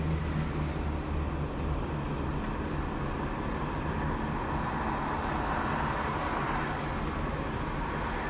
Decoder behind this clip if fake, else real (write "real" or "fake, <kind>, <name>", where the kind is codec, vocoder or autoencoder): real